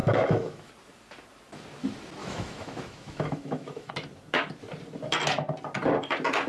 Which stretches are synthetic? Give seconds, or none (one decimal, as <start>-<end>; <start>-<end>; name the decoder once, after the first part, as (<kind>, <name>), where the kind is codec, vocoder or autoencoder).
0.0-0.7 (autoencoder, DAC-VAE); 2.2-3.9